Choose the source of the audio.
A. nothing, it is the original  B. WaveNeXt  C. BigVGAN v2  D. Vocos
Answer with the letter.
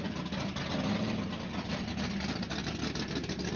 A